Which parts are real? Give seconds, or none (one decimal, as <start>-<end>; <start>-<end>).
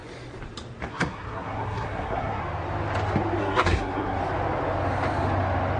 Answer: 0.0-0.9; 2.4-3.4; 4.2-5.8